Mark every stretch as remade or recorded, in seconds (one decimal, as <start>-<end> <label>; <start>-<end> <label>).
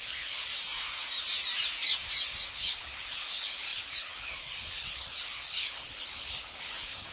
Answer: 0.0-0.5 remade; 0.5-2.5 recorded; 2.5-7.1 remade